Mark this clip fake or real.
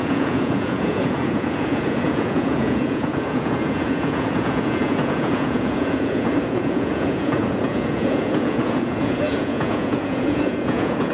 fake